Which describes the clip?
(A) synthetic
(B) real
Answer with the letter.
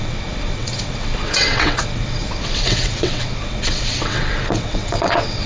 A